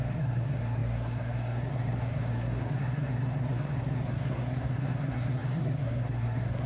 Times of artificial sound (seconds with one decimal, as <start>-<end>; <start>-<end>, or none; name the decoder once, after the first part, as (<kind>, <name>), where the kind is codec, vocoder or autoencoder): 0.0-6.7 (codec, SNAC)